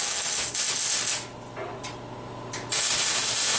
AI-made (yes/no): no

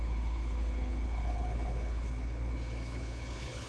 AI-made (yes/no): yes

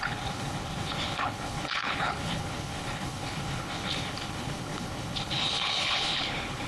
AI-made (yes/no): yes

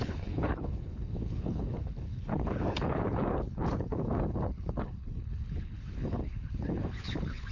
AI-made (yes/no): yes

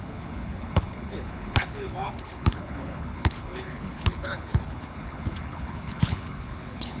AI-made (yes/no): yes